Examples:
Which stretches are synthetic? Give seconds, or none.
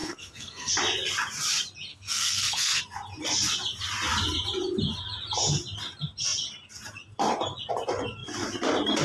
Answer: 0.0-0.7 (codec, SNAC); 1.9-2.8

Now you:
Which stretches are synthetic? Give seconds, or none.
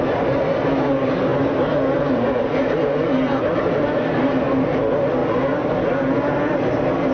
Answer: none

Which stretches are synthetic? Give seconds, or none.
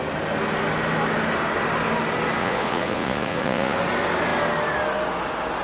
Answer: 2.4-3.8 (vocoder, Vocos)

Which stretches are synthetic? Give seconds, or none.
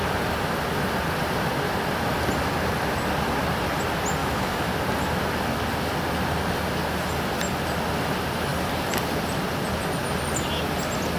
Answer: 4.2-4.7 (autoencoder, DAC-VAE)